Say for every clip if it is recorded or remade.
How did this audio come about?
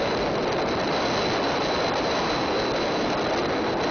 recorded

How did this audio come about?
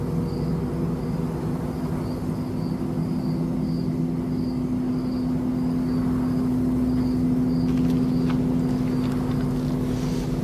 recorded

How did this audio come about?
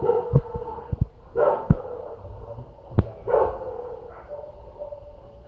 remade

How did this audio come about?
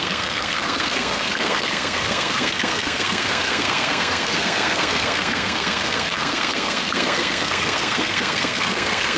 remade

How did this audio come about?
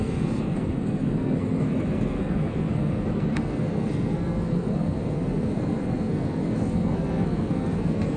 remade